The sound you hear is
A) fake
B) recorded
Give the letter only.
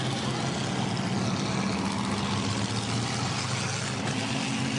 B